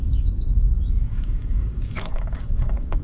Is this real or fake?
fake